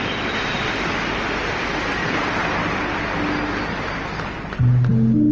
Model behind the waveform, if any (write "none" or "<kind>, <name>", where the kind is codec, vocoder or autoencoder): none